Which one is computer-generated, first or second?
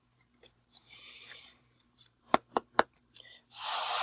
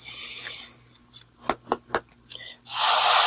first